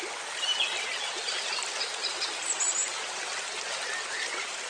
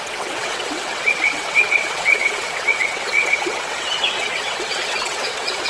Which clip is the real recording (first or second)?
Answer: first